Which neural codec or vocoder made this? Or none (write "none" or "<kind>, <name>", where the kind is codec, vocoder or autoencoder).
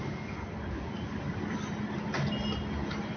none